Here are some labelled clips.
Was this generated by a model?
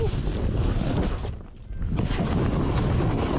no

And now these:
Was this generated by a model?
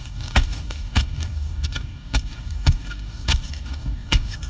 yes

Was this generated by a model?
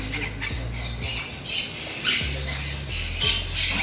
no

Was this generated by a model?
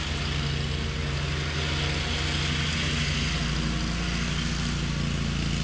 no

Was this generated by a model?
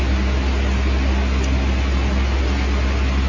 no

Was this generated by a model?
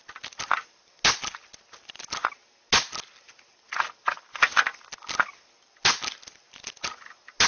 no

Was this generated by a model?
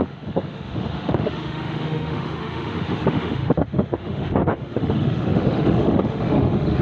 yes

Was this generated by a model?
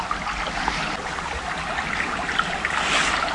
no